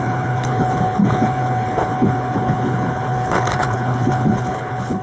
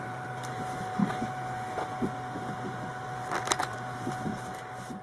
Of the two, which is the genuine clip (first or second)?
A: second